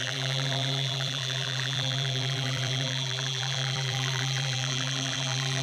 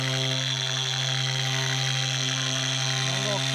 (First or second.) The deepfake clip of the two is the first